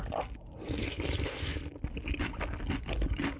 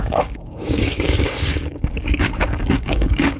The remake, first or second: second